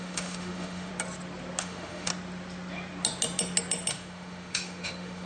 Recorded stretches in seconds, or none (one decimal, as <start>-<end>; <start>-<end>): 0.9-1.6; 2.1-3.9